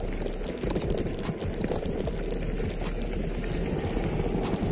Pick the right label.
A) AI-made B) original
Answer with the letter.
B